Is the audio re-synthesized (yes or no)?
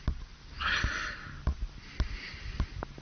no